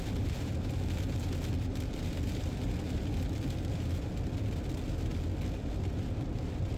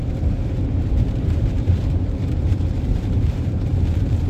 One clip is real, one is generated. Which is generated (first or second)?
second